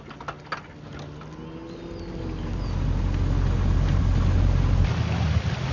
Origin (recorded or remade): recorded